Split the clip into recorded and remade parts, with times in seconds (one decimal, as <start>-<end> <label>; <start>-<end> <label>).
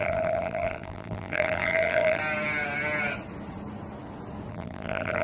0.0-2.2 remade; 2.2-4.5 recorded; 4.5-5.2 remade